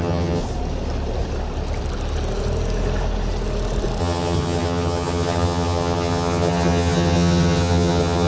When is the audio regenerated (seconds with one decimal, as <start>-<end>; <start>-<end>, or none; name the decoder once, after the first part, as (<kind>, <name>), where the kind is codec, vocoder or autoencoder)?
0.0-0.4 (vocoder, HiFi-GAN); 4.0-8.3